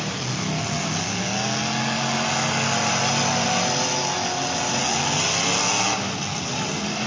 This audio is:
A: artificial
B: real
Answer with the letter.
B